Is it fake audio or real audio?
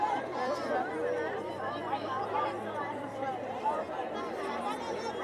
real